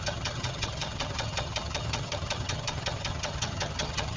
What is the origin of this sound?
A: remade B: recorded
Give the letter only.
A